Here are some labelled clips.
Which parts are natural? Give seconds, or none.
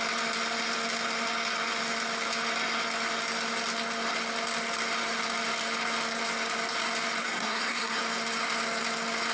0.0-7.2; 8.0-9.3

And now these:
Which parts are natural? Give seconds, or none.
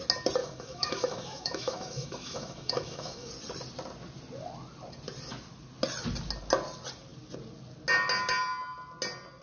0.0-0.4; 3.3-9.4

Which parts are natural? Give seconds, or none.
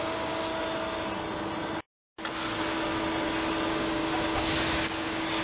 0.5-3.7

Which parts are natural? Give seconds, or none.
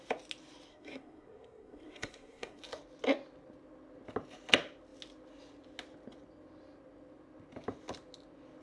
0.0-0.7; 2.6-8.6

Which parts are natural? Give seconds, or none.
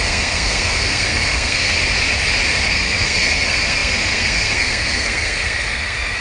1.8-2.7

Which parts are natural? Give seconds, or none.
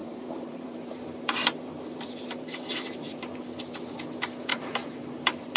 3.4-4.5